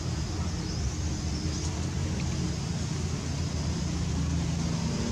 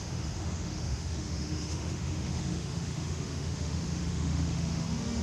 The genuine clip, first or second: first